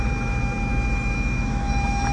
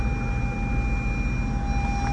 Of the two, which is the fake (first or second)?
first